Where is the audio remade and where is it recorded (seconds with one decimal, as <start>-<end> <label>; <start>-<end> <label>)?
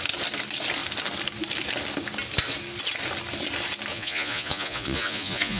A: 0.0-3.9 recorded; 3.9-5.6 remade